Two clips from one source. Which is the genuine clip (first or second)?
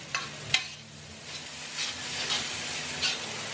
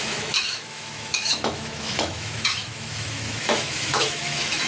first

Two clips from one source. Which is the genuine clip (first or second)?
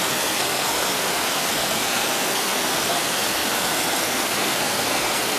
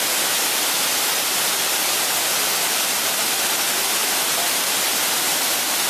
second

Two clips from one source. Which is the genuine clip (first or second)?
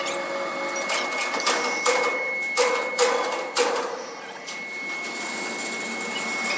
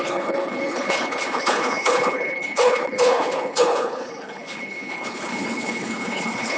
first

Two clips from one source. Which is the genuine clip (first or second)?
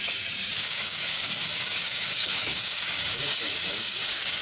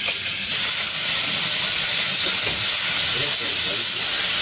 second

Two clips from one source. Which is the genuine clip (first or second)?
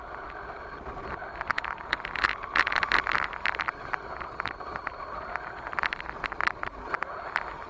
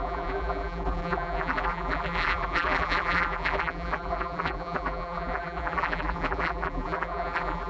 first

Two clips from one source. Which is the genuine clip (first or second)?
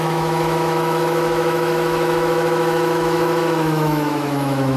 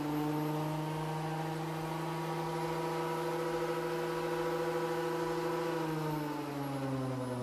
second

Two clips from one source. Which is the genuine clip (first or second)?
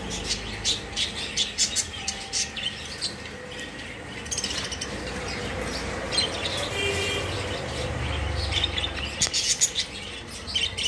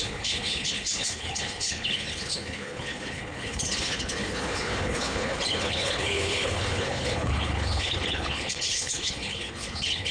first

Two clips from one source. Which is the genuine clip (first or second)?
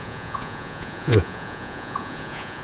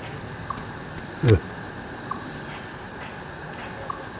second